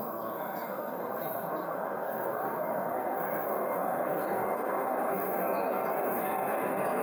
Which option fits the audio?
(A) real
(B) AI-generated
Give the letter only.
B